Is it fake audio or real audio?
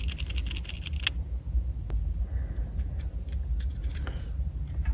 real